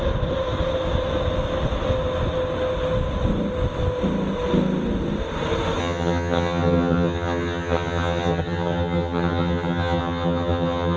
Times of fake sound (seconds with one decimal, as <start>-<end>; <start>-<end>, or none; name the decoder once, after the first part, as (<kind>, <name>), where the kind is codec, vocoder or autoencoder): 5.8-11.0 (vocoder, HiFi-GAN)